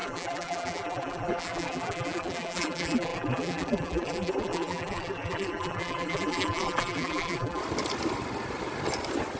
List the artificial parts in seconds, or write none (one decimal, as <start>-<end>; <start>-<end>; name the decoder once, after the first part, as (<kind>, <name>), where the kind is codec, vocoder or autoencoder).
0.0-7.6 (vocoder, BigVGAN v2)